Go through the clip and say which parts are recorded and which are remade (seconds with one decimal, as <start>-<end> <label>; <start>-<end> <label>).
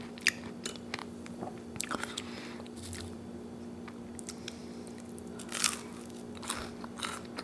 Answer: 0.0-1.0 recorded; 1.0-3.2 remade; 3.2-7.4 recorded